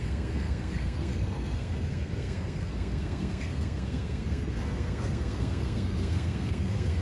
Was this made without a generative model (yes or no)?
no